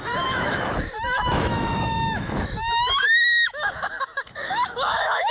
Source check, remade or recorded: remade